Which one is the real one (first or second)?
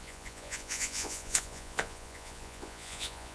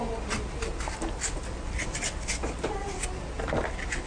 second